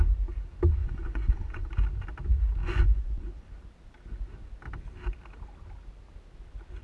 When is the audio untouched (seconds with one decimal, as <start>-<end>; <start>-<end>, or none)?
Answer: 0.0-0.8; 1.7-2.6; 3.5-6.8